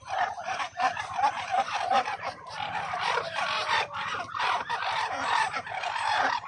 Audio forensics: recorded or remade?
remade